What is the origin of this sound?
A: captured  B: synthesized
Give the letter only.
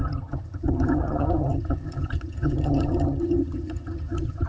B